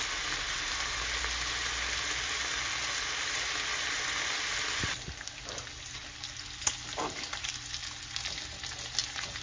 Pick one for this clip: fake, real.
real